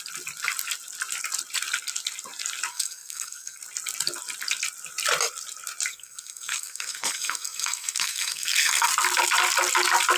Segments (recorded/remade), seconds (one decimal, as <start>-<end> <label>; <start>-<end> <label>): 0.0-2.7 recorded; 2.7-3.6 remade; 3.6-5.9 recorded; 5.9-8.9 remade; 8.9-10.2 recorded